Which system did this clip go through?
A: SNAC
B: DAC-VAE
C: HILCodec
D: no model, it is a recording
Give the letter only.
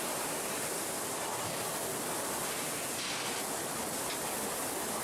D